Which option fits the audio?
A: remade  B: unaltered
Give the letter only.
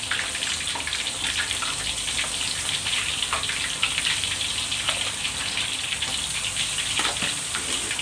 B